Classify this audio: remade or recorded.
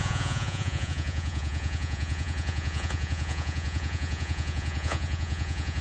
remade